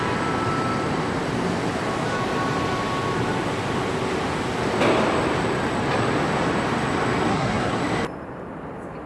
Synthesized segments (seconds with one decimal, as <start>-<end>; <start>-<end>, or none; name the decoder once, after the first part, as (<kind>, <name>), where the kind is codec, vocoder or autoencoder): 7.3-7.8 (codec, SNAC)